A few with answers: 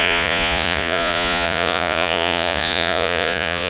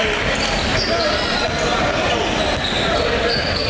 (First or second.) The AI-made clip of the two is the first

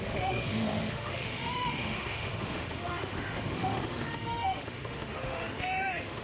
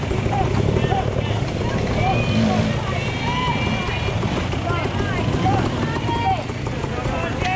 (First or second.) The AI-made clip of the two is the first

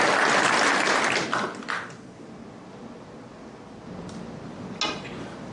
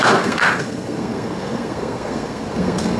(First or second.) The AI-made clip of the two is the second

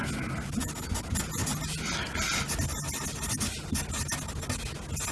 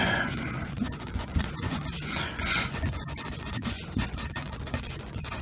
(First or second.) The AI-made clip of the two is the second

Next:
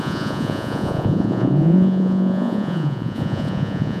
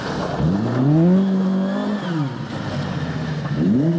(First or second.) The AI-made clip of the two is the first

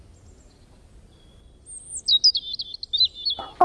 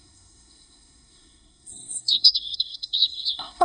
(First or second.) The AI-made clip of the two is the second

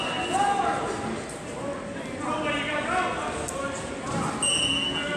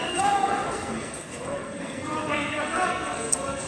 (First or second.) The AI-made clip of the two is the second